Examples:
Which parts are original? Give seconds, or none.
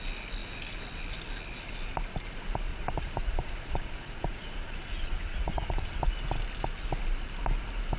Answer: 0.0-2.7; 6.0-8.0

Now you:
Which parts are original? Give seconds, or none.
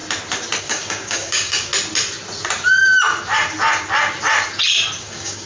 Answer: 0.0-0.6; 1.7-5.0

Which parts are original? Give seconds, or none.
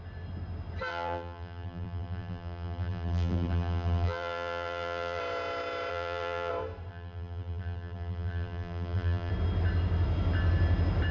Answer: 0.0-0.9; 5.2-5.9; 6.5-6.9; 9.3-11.1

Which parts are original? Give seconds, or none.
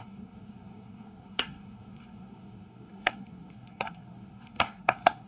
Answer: none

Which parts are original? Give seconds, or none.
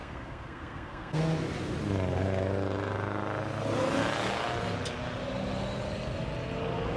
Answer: 1.2-7.0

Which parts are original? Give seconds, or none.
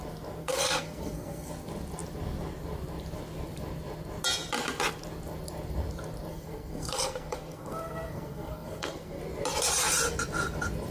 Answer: 0.0-0.4; 1.5-6.3; 9.2-10.9